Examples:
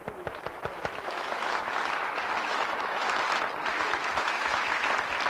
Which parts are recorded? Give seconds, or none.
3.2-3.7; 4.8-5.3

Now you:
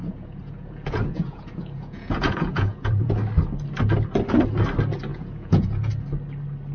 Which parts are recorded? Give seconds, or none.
3.1-5.1; 5.9-6.7

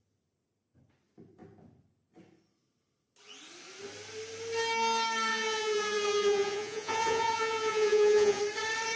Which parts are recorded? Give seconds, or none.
0.0-5.3; 8.4-9.0

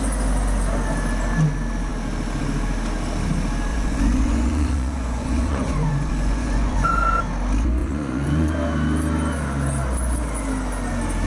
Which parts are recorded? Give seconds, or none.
0.0-3.7; 7.2-7.8; 8.5-11.3

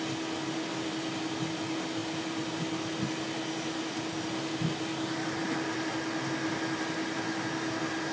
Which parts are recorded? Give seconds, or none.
0.0-8.1